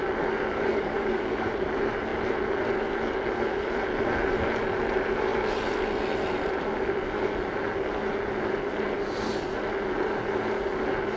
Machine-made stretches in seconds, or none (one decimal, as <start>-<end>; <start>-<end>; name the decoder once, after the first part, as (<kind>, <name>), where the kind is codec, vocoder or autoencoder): 0.7-1.5 (codec, DAC)

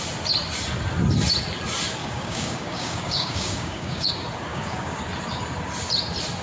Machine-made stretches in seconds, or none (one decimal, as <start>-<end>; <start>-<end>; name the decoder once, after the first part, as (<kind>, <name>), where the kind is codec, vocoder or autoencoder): 2.0-4.1 (codec, DAC); 4.5-5.0

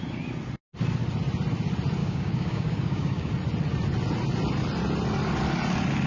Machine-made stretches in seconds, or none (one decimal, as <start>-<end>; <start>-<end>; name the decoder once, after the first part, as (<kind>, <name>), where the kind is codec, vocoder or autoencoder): 2.0-3.3 (codec, DAC)